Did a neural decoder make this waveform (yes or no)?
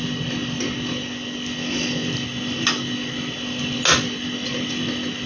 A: no